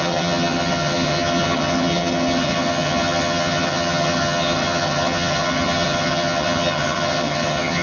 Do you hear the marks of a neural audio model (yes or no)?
yes